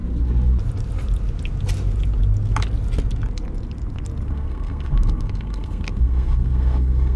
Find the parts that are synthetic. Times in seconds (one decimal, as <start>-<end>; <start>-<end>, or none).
4.3-7.2